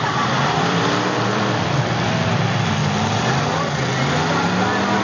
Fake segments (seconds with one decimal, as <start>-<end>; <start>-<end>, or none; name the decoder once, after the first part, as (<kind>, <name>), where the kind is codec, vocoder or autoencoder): 0.0-1.4 (vocoder, BigVGAN v2)